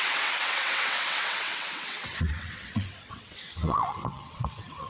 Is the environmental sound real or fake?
fake